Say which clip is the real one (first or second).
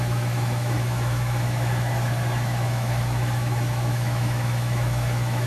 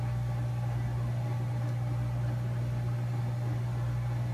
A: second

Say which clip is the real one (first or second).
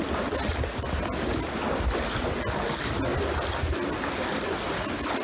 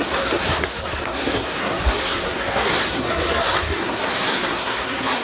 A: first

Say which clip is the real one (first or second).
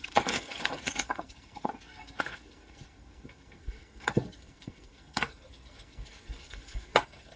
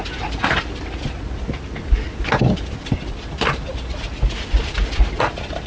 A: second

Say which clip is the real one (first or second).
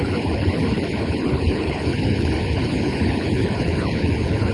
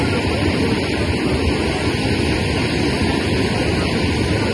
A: second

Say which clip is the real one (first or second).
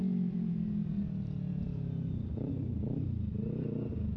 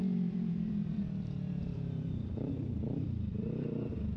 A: first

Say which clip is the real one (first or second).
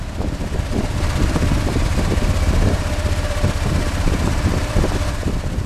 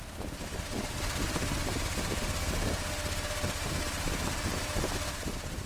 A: second